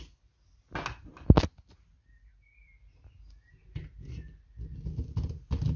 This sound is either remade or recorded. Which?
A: recorded